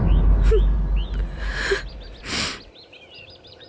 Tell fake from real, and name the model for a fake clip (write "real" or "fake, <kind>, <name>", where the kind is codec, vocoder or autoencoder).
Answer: real